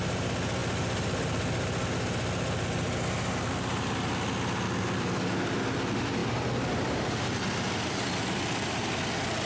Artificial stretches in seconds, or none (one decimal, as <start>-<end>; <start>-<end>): none